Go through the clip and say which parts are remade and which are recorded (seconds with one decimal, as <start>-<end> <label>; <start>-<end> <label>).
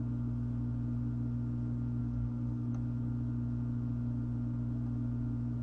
0.0-2.0 recorded; 2.0-2.7 remade; 2.7-5.6 recorded